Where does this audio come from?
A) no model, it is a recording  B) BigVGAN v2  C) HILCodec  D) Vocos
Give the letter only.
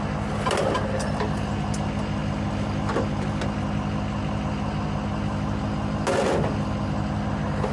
A